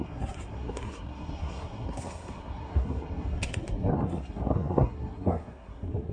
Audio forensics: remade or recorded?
remade